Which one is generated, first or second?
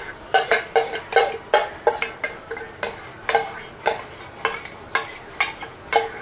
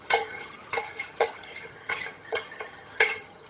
second